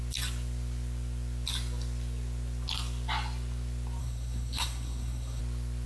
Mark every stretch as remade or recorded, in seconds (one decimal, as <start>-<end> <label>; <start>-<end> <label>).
0.0-4.0 recorded; 4.0-5.4 remade; 5.4-5.9 recorded

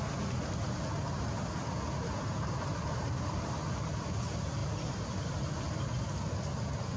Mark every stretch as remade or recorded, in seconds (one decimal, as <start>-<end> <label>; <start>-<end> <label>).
0.0-7.0 recorded

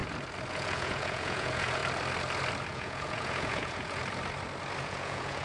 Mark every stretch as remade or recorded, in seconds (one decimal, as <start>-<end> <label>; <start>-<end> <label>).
0.0-0.5 recorded; 0.5-1.8 remade; 1.8-2.7 recorded; 2.7-4.0 remade; 4.0-4.8 recorded; 4.8-5.4 remade

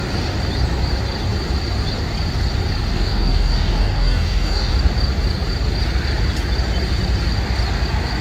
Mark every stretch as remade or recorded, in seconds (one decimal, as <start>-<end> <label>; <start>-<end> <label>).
0.0-2.9 recorded; 2.9-4.7 remade; 4.7-8.2 recorded

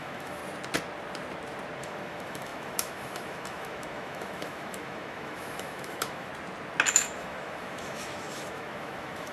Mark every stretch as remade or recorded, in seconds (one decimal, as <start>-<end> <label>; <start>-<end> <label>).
0.0-0.4 remade; 0.4-1.8 recorded; 1.8-6.3 remade; 6.3-6.9 recorded; 6.9-9.3 remade

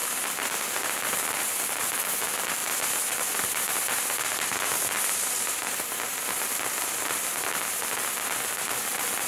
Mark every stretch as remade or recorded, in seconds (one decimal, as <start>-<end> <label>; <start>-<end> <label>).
0.0-1.4 remade; 1.4-2.6 recorded; 2.6-7.6 remade; 7.6-9.3 recorded